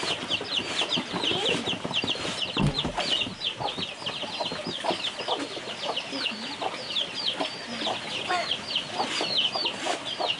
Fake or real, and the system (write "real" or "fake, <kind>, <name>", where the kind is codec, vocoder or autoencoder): real